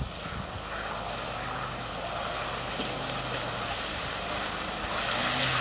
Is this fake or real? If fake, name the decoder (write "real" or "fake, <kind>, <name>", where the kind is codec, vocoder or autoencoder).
real